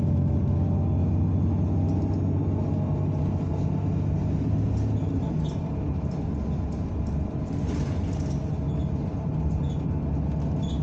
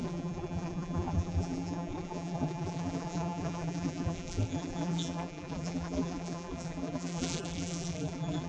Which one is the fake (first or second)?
second